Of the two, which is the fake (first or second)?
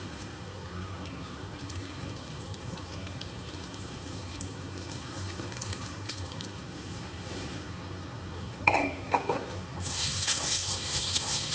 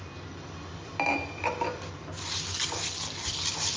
first